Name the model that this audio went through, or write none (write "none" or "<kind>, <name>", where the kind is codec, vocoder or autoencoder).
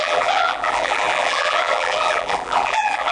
vocoder, BigVGAN v2